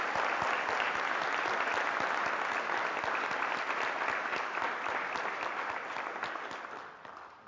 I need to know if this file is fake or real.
real